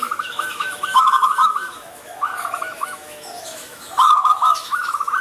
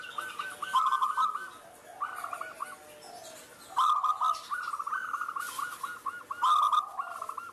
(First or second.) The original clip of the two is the second